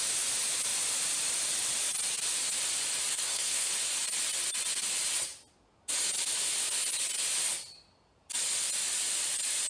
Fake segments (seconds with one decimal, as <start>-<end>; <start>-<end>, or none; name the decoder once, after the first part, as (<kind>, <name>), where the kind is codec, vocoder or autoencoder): 3.1-3.7 (codec, SNAC)